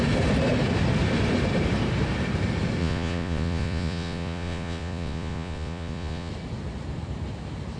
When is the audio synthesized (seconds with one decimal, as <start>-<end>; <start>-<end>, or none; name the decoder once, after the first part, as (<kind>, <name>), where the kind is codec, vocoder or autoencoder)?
2.8-6.3 (vocoder, Vocos)